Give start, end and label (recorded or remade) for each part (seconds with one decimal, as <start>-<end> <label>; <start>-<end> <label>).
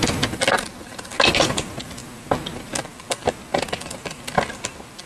0.0-5.1 recorded